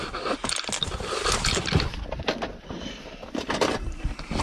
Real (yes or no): yes